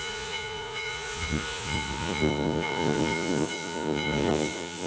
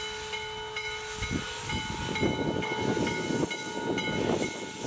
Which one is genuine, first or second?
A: second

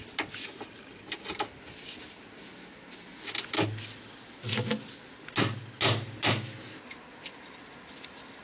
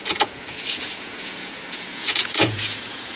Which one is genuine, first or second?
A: first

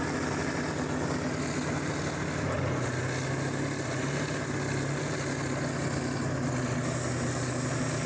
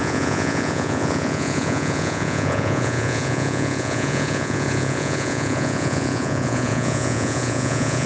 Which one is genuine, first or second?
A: first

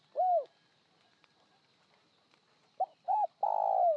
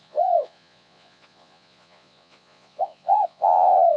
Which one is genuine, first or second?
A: first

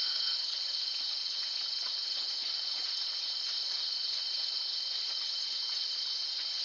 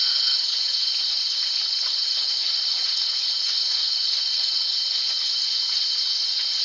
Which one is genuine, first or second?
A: first